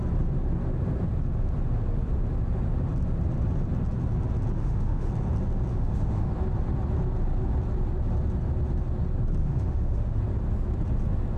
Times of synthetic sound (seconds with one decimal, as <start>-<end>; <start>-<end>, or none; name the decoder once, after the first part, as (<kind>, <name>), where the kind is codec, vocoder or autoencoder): 4.6-5.1 (autoencoder, DAC-VAE); 5.7-6.3; 9.4-10.2